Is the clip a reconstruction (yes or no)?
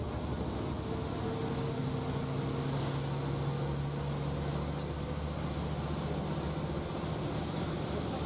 no